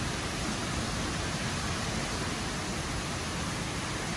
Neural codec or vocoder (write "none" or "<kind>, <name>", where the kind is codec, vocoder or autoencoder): none